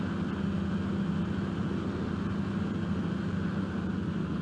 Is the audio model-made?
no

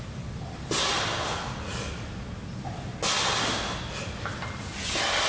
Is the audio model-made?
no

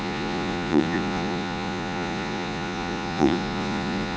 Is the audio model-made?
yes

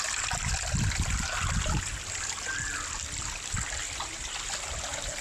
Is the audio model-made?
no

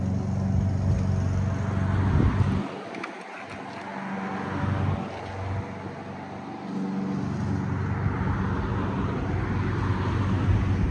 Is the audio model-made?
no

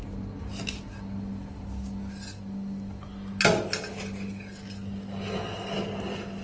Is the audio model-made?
no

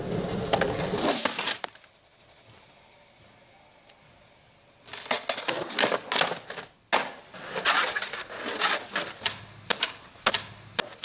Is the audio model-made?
no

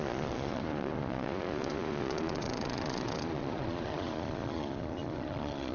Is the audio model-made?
yes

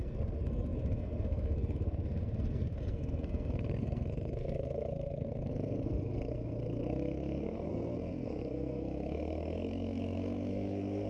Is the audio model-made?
yes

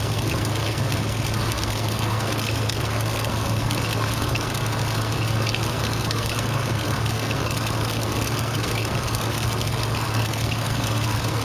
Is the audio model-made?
yes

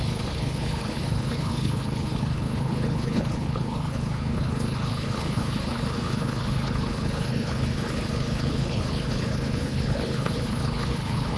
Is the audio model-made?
yes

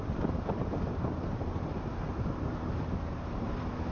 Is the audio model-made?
yes